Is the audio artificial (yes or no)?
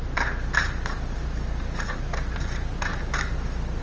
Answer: no